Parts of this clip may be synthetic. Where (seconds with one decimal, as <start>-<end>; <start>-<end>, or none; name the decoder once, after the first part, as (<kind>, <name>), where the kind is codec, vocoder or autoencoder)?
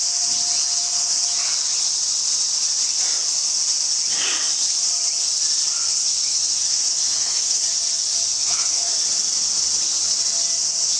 6.0-7.6 (autoencoder, DAC-VAE); 8.3-9.0